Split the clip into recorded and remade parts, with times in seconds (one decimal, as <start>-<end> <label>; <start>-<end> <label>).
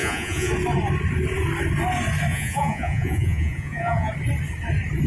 0.0-0.5 remade; 0.5-2.3 recorded; 2.3-4.1 remade; 4.1-5.1 recorded